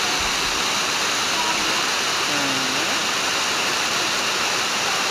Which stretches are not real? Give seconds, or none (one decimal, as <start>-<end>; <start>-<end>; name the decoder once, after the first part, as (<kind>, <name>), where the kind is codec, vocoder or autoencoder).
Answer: none